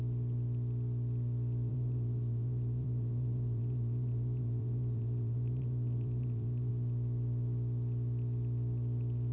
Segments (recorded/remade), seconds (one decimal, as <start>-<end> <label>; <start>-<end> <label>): 0.0-1.7 recorded; 1.7-6.7 remade; 6.7-9.3 recorded